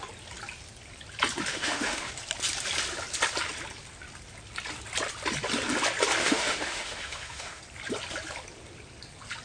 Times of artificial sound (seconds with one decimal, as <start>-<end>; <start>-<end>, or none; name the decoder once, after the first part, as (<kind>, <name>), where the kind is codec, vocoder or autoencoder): 1.5-2.1 (autoencoder, DAC-VAE); 6.2-7.6